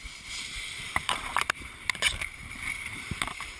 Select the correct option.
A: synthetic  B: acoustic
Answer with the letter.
A